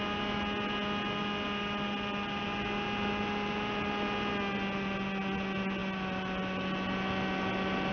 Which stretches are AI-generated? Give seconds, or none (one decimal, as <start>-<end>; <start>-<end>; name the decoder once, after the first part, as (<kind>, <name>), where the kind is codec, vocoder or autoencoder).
none